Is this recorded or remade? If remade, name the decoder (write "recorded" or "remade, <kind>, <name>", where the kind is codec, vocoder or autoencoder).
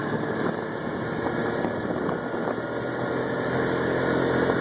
recorded